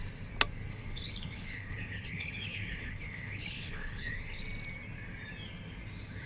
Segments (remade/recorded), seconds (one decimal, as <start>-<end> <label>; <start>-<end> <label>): 0.0-0.7 recorded; 0.7-4.4 remade; 4.4-6.3 recorded